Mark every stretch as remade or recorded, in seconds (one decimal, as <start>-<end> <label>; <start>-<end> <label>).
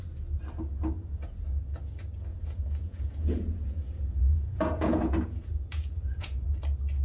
0.0-1.0 recorded; 1.0-1.8 remade; 1.8-2.3 recorded; 2.3-6.5 remade; 6.5-7.0 recorded